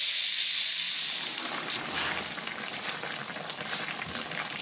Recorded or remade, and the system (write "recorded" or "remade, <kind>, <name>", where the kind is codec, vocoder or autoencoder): remade, vocoder, BigVGAN v2